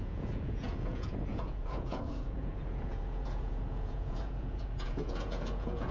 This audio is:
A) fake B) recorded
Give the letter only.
A